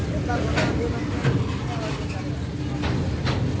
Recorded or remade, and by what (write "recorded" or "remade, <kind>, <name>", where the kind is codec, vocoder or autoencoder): recorded